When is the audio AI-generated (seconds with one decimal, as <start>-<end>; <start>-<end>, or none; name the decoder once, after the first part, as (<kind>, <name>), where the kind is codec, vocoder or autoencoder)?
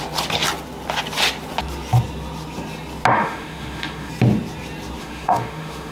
3.1-4.1 (autoencoder, DAC-VAE); 5.0-5.9